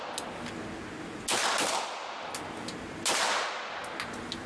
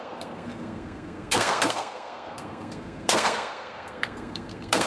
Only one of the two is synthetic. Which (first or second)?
second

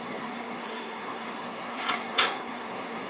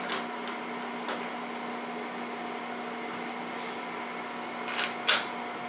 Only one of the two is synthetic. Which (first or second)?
first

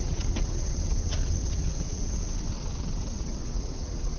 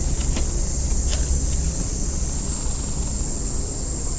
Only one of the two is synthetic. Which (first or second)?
first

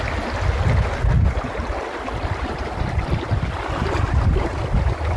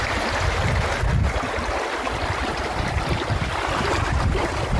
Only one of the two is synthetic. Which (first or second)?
second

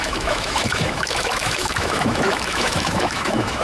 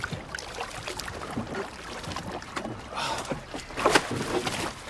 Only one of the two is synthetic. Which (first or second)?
first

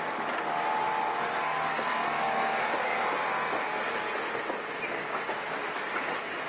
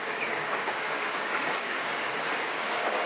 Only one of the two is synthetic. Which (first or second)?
second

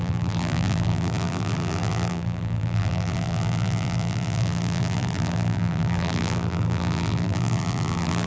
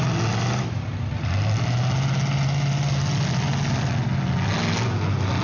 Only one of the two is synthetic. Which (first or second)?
first